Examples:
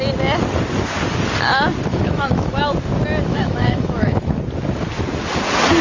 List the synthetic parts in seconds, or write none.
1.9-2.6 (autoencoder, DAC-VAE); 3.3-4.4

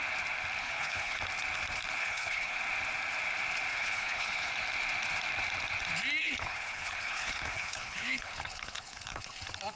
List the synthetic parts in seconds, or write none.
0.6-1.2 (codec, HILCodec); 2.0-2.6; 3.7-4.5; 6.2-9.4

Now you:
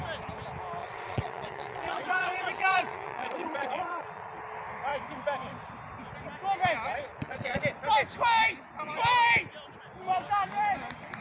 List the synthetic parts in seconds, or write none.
0.8-4.3 (vocoder, Vocos); 7.1-7.6

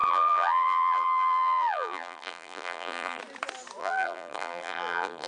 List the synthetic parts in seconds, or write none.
0.0-3.2 (vocoder, BigVGAN v2); 3.8-5.3